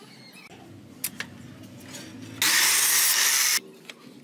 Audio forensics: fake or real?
real